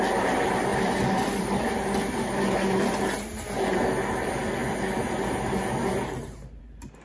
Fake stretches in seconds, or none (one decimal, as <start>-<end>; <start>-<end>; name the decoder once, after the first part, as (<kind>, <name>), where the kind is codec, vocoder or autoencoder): 0.7-2.9 (vocoder, BigVGAN v2)